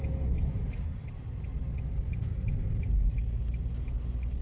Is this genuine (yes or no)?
yes